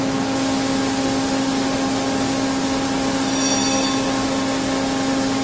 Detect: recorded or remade recorded